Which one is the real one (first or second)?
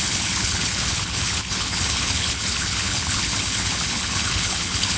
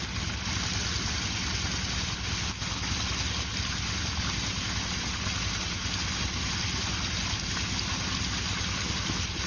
second